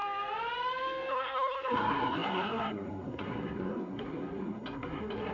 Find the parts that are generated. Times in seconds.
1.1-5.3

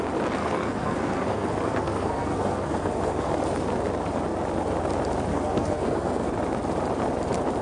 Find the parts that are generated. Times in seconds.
0.4-3.3; 5.3-6.3

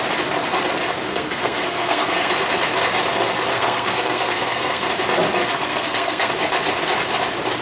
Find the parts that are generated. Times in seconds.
1.1-2.3; 3.5-4.9; 5.4-6.3

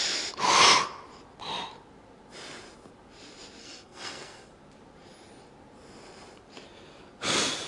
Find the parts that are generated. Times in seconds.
3.6-4.5

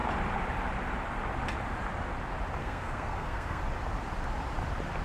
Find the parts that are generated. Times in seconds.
2.6-3.6

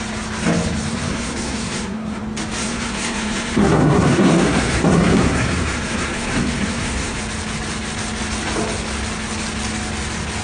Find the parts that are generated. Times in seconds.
0.9-2.2; 2.6-7.2